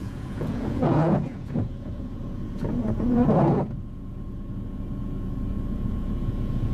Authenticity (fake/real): fake